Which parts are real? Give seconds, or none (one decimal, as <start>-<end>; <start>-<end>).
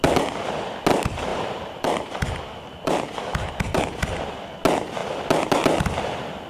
0.0-1.3; 3.8-6.5